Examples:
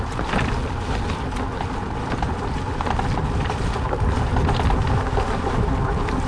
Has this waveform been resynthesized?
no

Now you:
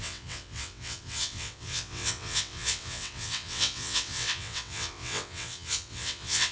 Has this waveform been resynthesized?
yes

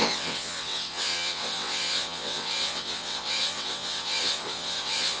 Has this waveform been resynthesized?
yes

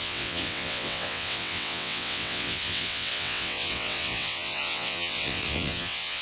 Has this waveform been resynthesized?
yes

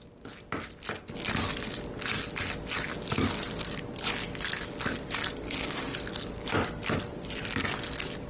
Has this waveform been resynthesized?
no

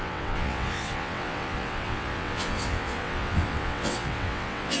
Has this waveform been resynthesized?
yes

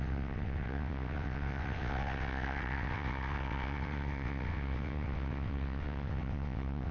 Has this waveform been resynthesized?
yes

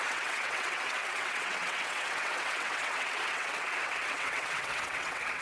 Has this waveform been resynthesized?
yes